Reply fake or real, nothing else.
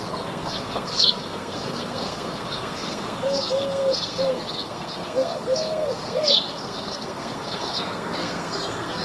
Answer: fake